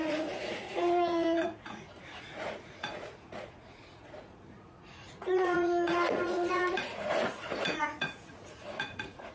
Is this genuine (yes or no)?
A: no